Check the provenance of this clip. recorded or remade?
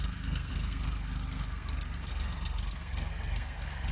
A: remade